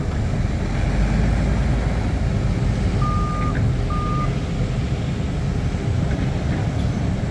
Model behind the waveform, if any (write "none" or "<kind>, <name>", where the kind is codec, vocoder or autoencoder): none